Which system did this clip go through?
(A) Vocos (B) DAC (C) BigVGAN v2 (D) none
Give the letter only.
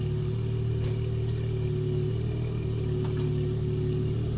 D